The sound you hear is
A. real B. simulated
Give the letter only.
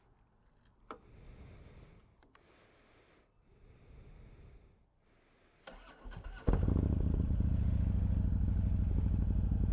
A